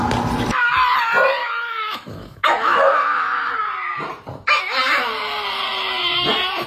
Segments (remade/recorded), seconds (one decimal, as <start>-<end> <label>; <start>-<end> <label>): 0.0-1.4 recorded; 1.4-3.5 remade; 3.5-6.7 recorded